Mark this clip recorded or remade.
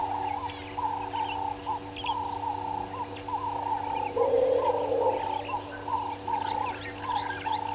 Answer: recorded